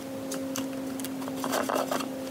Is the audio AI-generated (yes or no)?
no